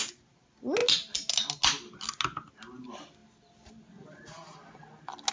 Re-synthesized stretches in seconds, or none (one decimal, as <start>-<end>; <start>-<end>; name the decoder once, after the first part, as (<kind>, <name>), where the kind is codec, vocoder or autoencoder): none